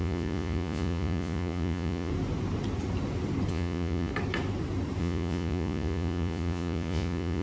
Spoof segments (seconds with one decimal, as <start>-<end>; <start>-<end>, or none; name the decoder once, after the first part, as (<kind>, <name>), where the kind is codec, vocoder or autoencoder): 0.0-2.1 (vocoder, Vocos); 3.5-4.1; 5.0-7.4